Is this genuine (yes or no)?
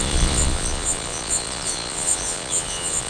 no